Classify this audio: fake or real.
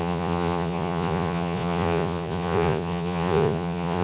fake